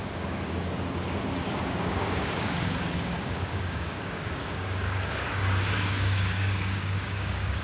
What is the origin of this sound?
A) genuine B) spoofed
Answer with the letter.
B